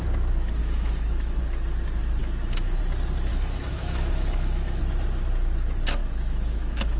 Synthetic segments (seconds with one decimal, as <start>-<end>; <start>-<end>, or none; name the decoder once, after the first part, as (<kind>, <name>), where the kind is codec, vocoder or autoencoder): 0.6-1.4 (autoencoder, DAC-VAE); 2.2-2.8; 3.3-4.8; 6.0-7.0